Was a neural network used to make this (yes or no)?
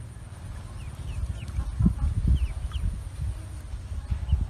no